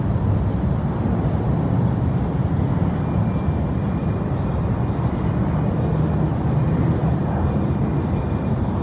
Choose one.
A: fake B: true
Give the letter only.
B